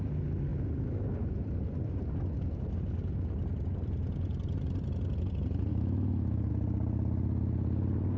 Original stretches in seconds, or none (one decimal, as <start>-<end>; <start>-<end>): 0.0-5.7; 6.5-8.2